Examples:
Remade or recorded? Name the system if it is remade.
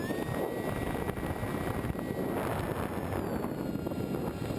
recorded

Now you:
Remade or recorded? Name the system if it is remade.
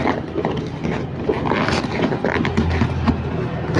recorded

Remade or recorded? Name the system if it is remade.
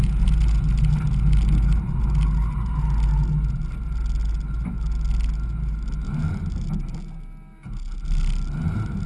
recorded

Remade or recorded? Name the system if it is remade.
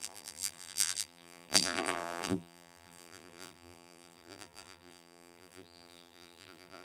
remade, vocoder, BigVGAN v2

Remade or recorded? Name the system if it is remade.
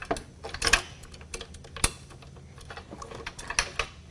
recorded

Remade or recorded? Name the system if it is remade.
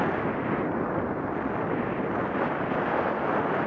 recorded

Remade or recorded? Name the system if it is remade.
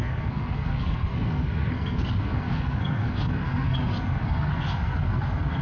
remade, codec, SNAC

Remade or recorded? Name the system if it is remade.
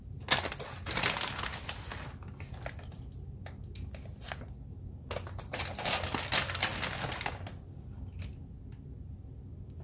recorded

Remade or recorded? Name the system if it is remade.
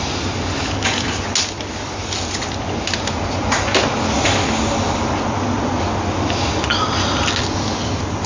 recorded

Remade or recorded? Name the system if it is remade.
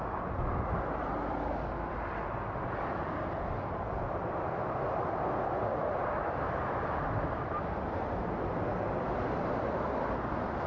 recorded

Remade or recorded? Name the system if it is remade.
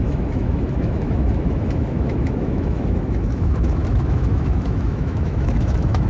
remade, autoencoder, DAC-VAE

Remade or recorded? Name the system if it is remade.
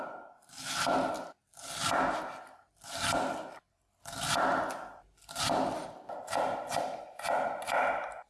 recorded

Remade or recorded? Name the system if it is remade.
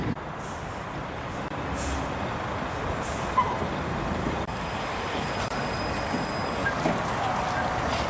recorded